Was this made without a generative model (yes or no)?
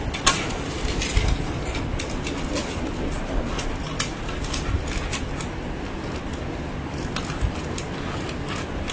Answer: yes